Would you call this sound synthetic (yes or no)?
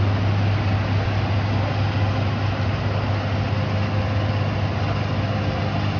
no